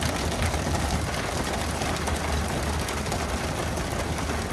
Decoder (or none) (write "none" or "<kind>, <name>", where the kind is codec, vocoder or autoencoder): none